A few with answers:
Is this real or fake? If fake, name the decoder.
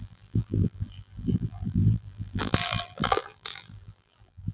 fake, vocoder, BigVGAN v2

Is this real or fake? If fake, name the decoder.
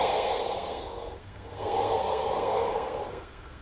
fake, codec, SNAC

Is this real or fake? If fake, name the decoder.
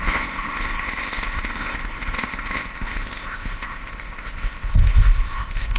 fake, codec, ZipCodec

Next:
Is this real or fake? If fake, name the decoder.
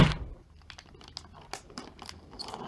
real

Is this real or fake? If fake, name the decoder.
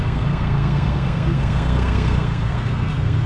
fake, codec, SNAC